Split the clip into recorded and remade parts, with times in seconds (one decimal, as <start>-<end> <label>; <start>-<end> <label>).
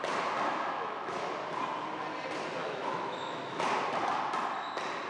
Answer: 0.0-0.5 recorded; 0.5-1.3 remade; 1.3-2.6 recorded; 2.6-3.6 remade; 3.6-5.1 recorded